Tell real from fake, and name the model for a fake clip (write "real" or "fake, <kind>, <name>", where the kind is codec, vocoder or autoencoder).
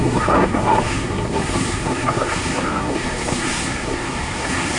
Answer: fake, codec, SNAC